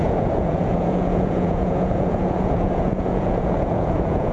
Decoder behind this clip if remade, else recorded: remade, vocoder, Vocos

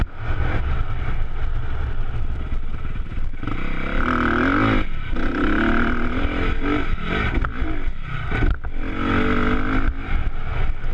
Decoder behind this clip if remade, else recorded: recorded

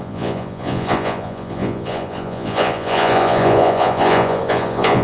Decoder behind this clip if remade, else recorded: remade, vocoder, Vocos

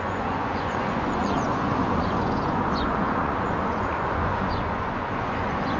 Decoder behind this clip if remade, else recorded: remade, vocoder, Vocos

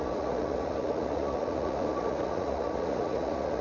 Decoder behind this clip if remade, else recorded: remade, vocoder, Vocos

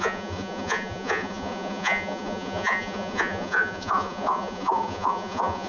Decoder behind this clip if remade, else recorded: remade, vocoder, Vocos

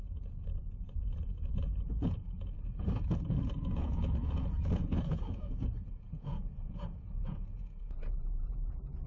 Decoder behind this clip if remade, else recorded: remade, vocoder, Vocos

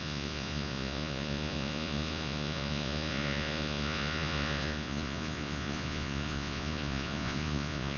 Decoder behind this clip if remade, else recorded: remade, vocoder, Vocos